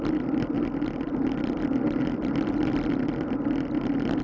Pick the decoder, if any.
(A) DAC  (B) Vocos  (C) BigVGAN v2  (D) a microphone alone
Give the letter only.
C